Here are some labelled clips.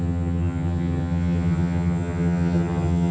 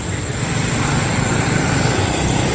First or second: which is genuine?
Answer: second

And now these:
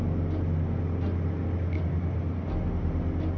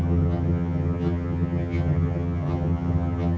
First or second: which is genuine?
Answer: first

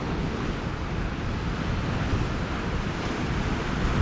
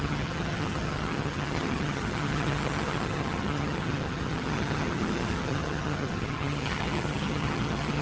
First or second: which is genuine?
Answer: first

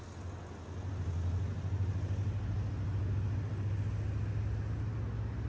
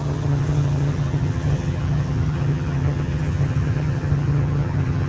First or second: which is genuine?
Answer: first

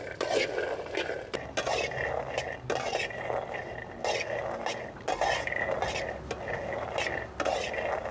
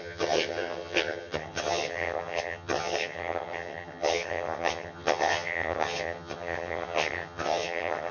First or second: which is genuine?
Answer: first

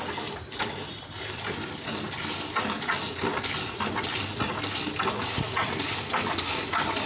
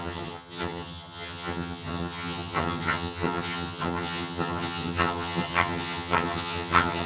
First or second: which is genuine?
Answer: first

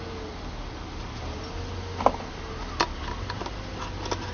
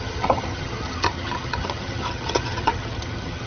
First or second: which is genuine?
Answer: first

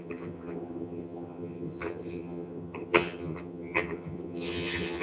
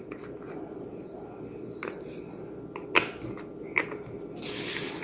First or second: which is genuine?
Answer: second